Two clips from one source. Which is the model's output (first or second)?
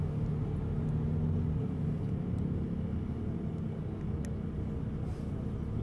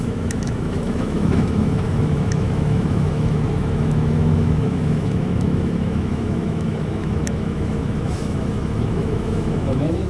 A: second